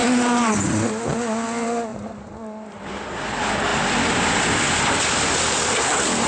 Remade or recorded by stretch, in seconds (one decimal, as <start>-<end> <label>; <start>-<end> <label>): 0.0-0.9 recorded; 0.9-6.3 remade